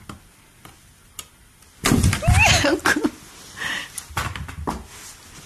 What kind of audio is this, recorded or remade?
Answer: recorded